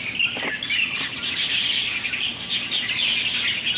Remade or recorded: recorded